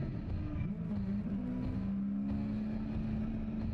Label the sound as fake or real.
real